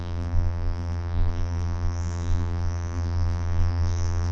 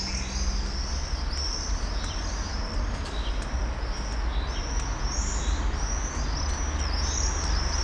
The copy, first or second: first